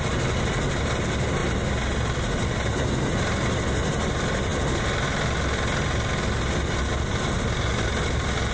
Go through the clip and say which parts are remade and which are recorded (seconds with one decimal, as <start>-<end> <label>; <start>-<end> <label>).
0.0-8.5 recorded